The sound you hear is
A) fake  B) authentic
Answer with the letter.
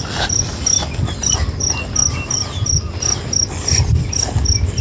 B